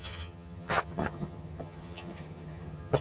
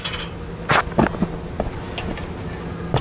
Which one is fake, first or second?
first